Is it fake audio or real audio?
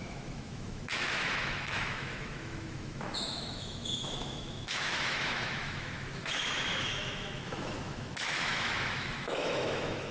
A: fake